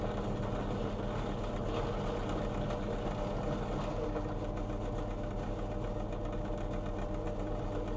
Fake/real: real